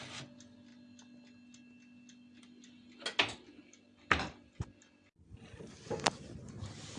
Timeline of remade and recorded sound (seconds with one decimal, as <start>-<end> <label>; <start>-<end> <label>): 0.0-7.0 recorded